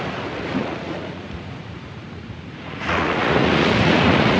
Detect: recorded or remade remade